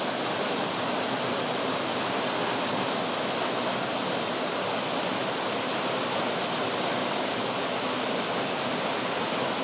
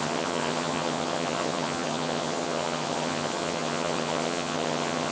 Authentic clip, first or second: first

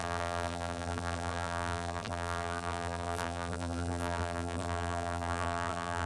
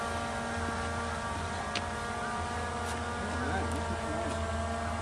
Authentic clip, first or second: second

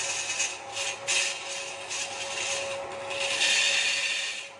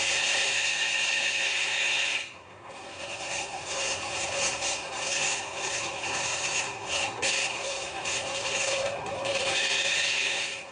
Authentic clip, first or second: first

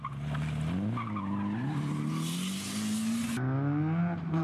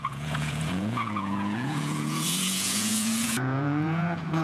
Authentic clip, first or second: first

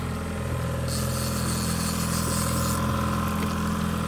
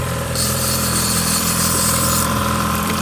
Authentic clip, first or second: first